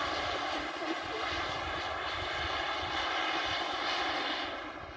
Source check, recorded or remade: recorded